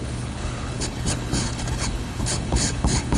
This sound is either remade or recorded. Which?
remade